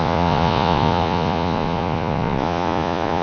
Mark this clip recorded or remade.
remade